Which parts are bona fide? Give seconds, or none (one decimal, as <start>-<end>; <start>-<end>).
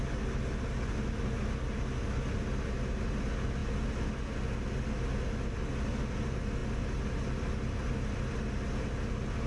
0.0-9.5